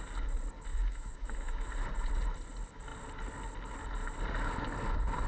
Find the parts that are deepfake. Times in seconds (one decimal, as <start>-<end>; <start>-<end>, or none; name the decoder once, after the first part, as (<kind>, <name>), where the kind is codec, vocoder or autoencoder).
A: 0.7-1.7 (autoencoder, DAC-VAE)